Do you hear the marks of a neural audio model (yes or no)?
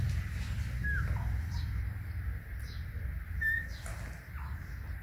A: no